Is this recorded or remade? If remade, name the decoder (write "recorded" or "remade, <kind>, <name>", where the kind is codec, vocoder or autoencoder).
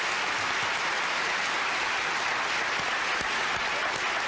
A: recorded